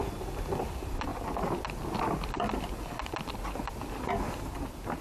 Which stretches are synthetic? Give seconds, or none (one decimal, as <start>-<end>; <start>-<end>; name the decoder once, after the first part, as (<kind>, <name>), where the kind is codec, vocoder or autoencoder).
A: none